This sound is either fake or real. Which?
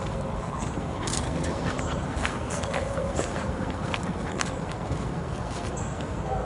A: fake